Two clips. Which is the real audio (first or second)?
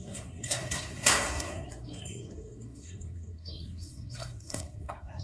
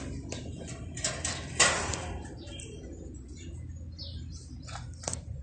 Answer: second